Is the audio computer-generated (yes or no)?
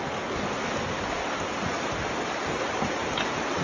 no